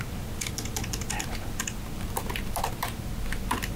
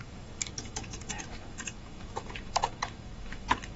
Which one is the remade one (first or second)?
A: second